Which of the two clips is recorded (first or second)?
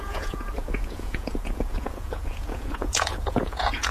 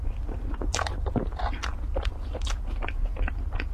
second